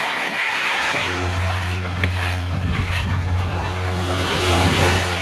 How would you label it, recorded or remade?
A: remade